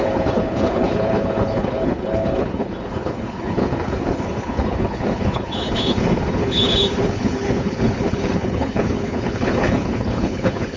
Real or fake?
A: fake